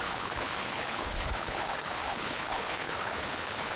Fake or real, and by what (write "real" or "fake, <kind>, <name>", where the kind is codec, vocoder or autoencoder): fake, codec, HILCodec